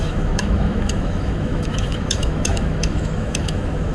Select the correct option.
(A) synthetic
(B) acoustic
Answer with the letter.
A